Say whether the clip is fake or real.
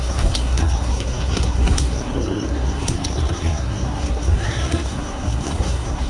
fake